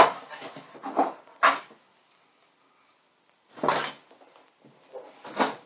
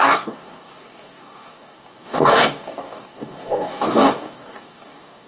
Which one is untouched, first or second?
first